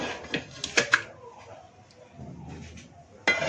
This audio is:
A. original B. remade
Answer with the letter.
A